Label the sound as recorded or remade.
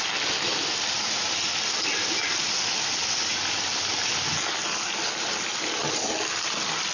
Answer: recorded